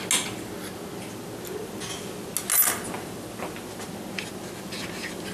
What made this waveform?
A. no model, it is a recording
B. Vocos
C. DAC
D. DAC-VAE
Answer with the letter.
A